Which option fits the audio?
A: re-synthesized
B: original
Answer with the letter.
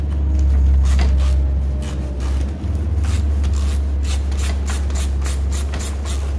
B